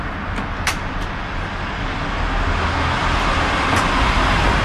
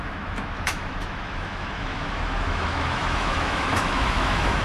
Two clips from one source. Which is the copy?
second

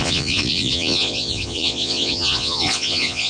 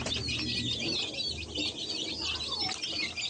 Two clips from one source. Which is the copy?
first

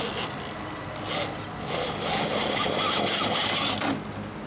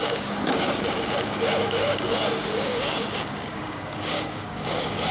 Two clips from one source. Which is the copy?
second